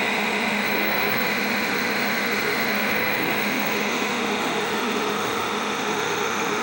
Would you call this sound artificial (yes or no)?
yes